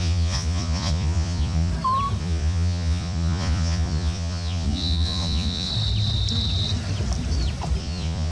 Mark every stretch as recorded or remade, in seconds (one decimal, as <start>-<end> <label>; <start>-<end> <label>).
0.0-1.7 remade; 1.7-2.2 recorded; 2.2-5.7 remade; 5.7-7.8 recorded; 7.8-8.3 remade